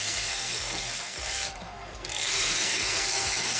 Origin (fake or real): fake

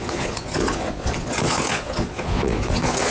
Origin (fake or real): fake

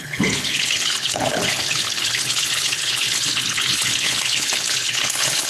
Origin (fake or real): fake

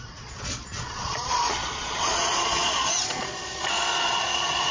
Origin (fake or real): fake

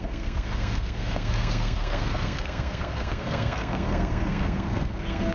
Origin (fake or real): fake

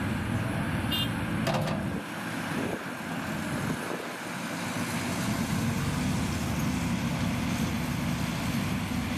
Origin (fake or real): real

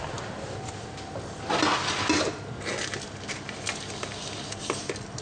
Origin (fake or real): real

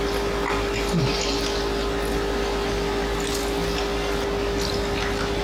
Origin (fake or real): real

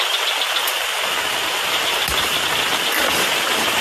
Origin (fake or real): real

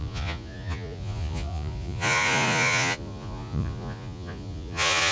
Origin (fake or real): fake